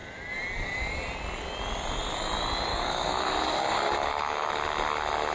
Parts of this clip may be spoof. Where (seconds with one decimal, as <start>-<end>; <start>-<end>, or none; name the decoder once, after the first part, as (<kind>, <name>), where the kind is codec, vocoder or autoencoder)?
2.7-4.5 (codec, DAC)